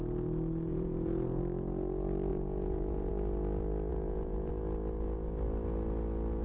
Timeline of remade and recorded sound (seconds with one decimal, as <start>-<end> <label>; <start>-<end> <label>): 0.0-0.7 recorded; 0.7-1.4 remade; 1.4-2.3 recorded; 2.3-3.1 remade; 3.1-3.9 recorded; 3.9-4.5 remade; 4.5-6.4 recorded